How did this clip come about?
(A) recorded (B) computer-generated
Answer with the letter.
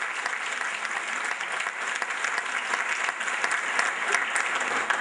A